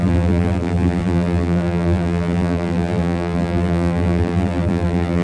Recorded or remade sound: remade